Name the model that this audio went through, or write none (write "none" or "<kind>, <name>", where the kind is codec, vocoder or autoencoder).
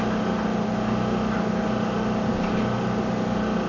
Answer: none